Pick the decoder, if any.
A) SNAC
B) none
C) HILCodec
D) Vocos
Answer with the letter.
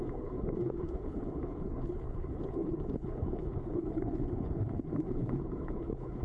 C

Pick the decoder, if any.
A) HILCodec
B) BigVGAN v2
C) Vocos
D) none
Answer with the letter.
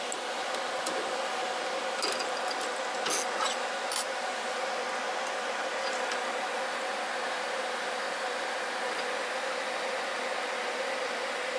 D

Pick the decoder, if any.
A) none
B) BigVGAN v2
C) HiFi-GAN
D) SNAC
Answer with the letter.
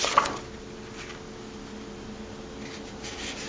A